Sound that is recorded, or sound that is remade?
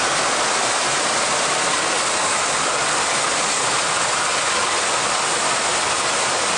recorded